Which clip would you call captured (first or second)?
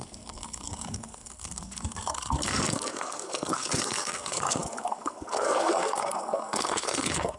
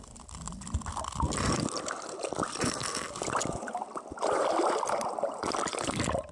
second